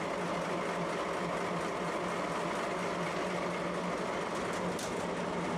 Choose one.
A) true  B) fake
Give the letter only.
A